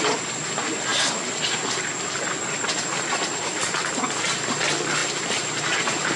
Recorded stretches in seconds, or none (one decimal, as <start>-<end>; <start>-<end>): 0.0-5.0; 5.6-6.2